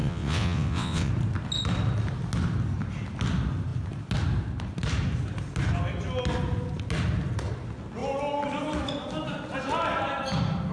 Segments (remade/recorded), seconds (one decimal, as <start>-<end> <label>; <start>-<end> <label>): 0.0-1.1 remade; 1.1-10.7 recorded